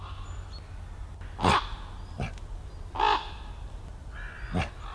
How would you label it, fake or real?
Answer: real